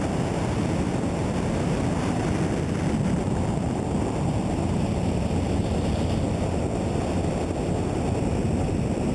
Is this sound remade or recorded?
recorded